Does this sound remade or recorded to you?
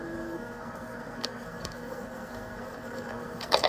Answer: remade